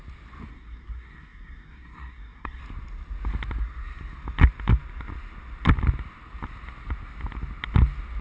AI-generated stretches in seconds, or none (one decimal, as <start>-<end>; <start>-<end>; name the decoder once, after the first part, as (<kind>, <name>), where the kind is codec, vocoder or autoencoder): 0.5-2.6 (codec, SNAC)